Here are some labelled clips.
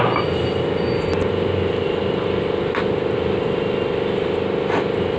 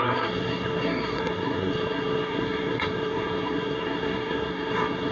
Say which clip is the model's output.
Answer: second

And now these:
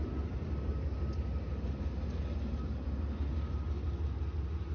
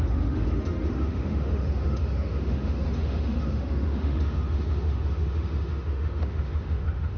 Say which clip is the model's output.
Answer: second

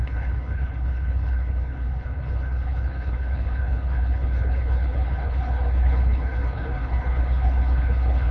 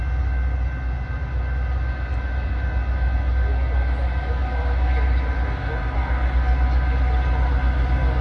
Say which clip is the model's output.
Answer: first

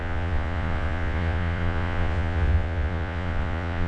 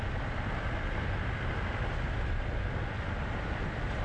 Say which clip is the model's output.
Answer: first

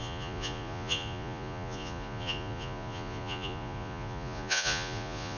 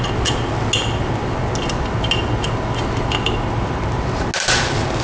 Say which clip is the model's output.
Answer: first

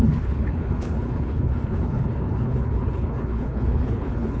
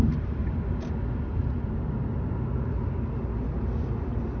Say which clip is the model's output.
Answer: first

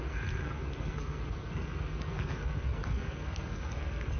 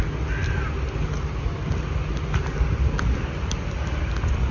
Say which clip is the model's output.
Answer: first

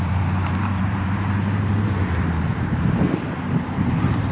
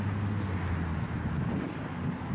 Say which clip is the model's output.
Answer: first